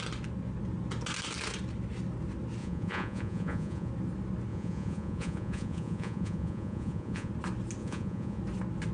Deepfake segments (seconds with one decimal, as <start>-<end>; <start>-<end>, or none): 2.6-3.9; 4.5-7.3; 7.8-8.4